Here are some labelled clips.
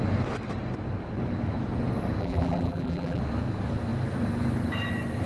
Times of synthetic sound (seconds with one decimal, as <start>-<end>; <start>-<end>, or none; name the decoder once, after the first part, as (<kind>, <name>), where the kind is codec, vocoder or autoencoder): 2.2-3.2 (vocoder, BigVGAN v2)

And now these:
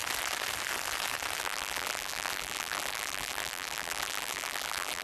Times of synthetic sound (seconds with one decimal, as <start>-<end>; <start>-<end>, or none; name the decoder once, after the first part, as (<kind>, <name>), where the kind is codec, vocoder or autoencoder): 1.4-5.0 (vocoder, BigVGAN v2)

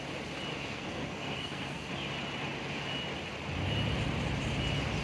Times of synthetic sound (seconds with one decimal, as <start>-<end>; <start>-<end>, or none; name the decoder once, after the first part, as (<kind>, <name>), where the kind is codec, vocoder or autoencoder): 0.5-1.9 (codec, SNAC)

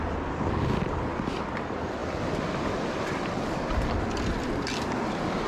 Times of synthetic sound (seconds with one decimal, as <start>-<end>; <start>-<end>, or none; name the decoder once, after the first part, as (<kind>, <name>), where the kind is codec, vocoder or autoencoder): none

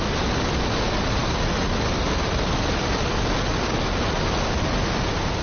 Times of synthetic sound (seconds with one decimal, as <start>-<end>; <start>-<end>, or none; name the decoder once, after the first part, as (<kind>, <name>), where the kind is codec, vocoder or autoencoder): none

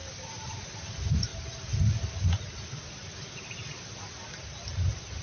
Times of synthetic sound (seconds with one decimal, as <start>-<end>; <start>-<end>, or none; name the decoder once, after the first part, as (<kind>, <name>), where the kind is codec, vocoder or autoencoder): none

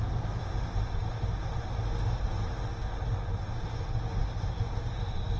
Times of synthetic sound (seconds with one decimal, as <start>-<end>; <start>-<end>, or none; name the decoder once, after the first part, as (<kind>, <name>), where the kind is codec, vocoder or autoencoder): none